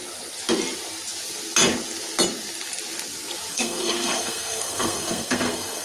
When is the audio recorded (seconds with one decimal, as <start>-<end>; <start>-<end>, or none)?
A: 0.0-3.5